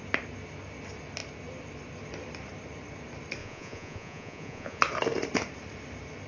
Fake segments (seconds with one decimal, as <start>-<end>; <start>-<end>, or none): 3.4-4.8